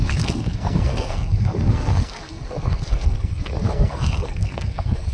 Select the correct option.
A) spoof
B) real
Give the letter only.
A